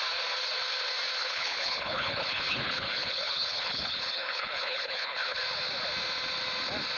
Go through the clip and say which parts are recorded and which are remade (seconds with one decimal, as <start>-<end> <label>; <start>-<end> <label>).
0.0-1.2 recorded; 1.2-5.4 remade; 5.4-7.0 recorded